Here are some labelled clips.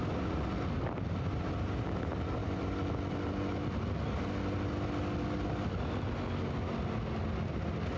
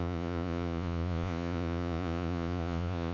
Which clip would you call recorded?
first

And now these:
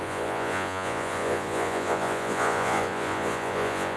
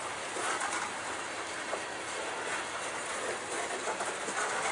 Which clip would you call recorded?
second